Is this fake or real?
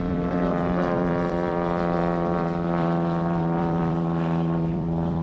fake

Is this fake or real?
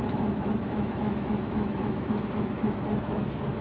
fake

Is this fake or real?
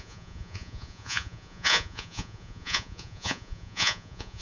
fake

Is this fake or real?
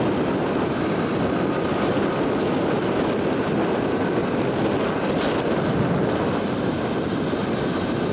real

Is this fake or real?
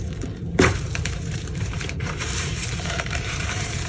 fake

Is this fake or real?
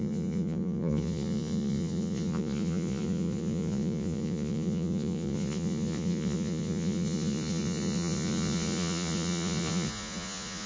fake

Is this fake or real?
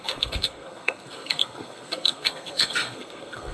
fake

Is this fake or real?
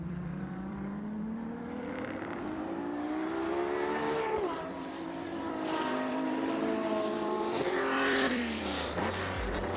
fake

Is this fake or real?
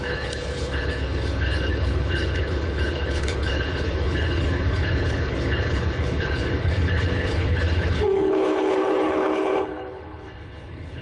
fake